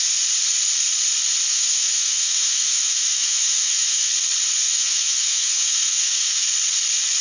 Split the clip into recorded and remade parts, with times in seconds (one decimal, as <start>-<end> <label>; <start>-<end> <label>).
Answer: 0.0-1.5 recorded; 1.5-4.1 remade; 4.1-4.6 recorded; 4.6-6.4 remade; 6.4-7.2 recorded